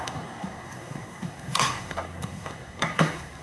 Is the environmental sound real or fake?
fake